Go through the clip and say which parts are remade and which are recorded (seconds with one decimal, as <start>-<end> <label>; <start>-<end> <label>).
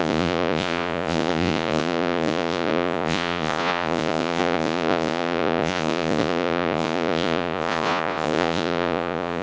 0.0-9.4 remade